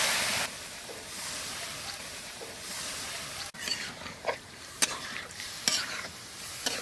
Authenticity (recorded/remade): remade